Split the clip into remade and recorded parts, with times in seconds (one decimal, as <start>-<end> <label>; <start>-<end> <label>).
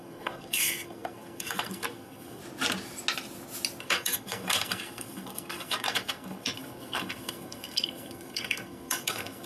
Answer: 0.0-2.4 remade; 2.4-3.8 recorded; 3.8-9.5 remade